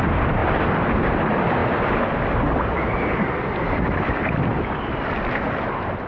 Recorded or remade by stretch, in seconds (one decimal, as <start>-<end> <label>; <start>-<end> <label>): 0.0-6.1 recorded